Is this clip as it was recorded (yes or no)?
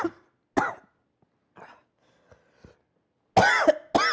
yes